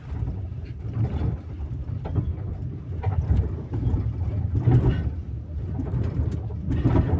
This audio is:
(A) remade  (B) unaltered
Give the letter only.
B